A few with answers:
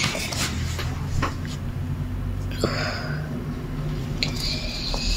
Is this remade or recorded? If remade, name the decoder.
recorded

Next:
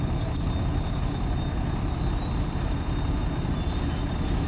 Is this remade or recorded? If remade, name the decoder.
recorded